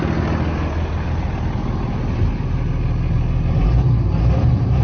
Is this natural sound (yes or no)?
yes